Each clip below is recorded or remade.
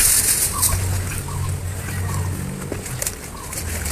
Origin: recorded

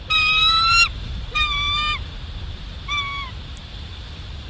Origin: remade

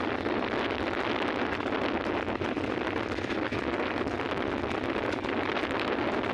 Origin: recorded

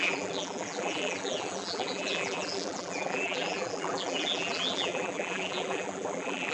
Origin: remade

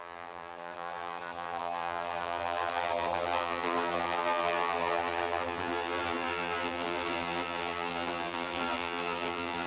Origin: remade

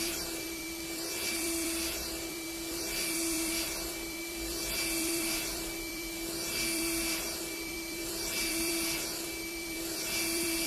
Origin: remade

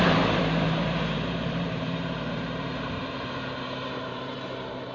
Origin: remade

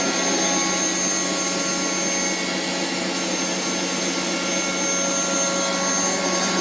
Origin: recorded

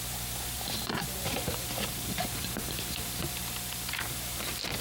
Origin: remade